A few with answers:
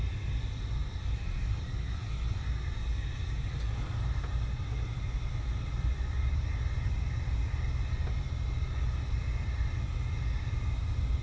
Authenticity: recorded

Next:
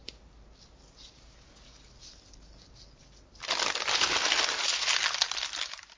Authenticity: recorded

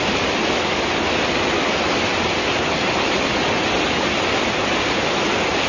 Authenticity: recorded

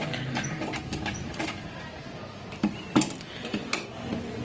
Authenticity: recorded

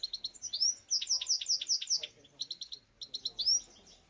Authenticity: recorded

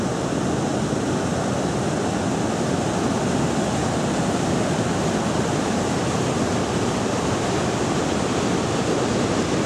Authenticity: recorded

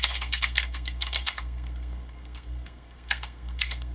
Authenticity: remade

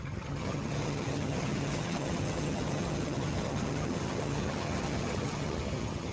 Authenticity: remade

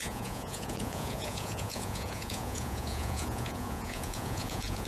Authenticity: remade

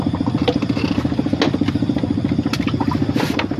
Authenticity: recorded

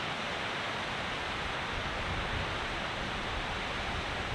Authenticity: recorded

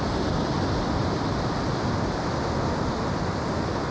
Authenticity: recorded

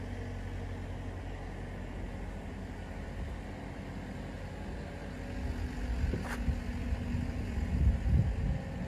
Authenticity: recorded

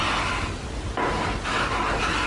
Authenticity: recorded